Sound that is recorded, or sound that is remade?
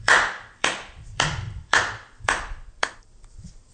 remade